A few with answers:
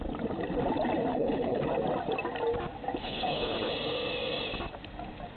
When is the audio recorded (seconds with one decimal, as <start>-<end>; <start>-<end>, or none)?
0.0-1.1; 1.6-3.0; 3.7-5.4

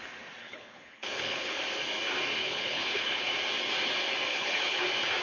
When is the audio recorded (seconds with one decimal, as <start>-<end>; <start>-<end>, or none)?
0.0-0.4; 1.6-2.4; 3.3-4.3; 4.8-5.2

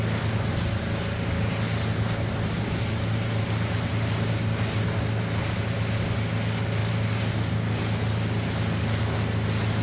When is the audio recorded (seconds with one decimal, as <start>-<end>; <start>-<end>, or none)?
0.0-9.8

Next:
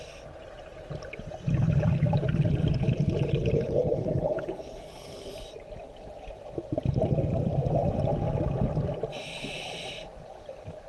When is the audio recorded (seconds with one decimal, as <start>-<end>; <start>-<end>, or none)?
0.0-3.5; 5.3-10.9